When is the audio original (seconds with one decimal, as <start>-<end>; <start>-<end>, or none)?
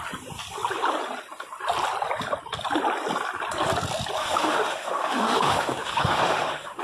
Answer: 0.0-4.2